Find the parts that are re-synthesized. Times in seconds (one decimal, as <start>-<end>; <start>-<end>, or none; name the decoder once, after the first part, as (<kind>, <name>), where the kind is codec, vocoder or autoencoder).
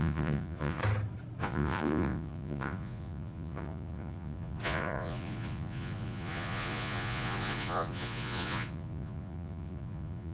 0.0-0.8 (vocoder, Vocos); 1.4-10.3